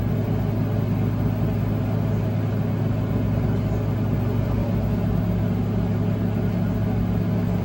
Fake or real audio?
real